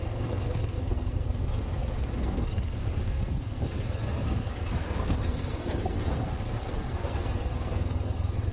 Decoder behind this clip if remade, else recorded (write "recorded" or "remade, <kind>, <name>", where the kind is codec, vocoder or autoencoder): remade, codec, SNAC